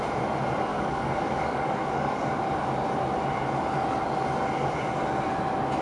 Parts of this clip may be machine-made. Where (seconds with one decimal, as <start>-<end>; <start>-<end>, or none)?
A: 0.7-2.4